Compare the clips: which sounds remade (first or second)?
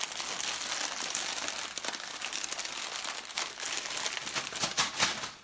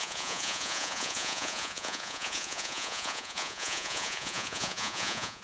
second